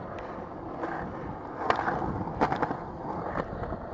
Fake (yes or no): no